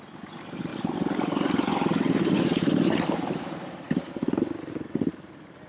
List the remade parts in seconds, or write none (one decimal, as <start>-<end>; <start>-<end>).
0.7-4.1